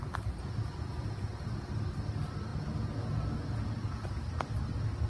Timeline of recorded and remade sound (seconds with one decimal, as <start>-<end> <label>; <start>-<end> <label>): 0.0-0.6 recorded; 0.6-1.7 remade; 1.7-2.5 recorded; 2.5-4.2 remade; 4.2-5.1 recorded